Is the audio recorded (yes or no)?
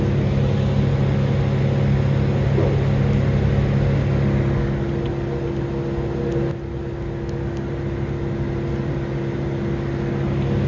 yes